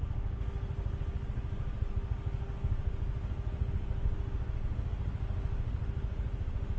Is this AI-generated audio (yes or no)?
no